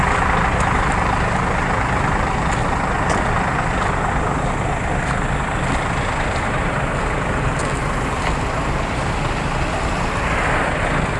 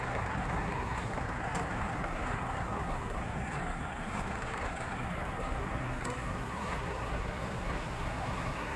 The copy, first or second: second